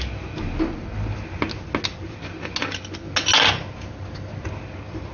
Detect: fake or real real